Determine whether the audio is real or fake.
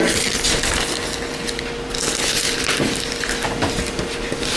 real